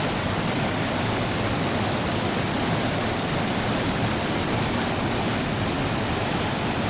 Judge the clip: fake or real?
real